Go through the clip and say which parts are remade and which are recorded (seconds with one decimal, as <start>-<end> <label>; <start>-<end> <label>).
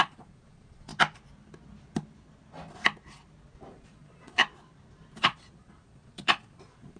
0.0-0.9 remade; 0.9-3.7 recorded; 3.7-4.4 remade; 4.4-5.2 recorded; 5.2-7.0 remade